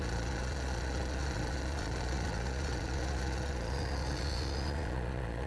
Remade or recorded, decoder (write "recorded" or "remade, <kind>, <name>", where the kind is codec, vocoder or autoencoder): remade, vocoder, Vocos